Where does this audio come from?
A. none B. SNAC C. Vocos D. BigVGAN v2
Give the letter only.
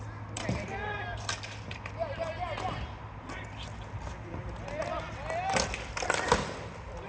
A